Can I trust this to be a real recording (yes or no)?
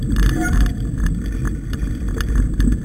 yes